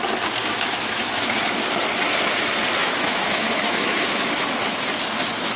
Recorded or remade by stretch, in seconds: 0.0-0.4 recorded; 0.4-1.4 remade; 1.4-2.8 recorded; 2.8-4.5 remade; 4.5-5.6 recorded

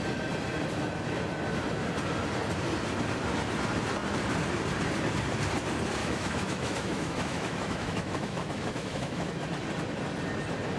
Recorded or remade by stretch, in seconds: 0.0-6.0 recorded; 6.0-9.3 remade; 9.3-10.8 recorded